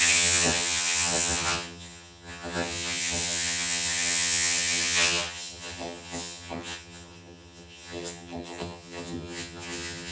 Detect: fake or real fake